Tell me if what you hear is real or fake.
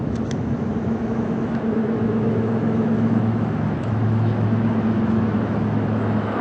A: fake